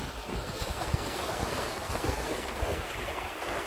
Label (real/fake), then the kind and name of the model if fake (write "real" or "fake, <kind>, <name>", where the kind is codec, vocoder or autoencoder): fake, codec, SNAC